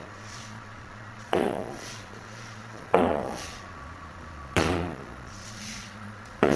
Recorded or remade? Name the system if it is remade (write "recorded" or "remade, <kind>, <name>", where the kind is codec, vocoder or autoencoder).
remade, vocoder, Vocos